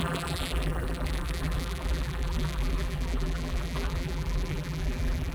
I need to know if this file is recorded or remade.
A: remade